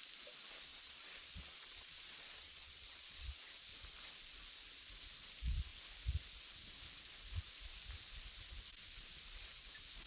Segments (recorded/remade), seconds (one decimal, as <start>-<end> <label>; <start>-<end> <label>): 0.0-0.7 recorded; 0.7-3.6 remade; 3.6-10.1 recorded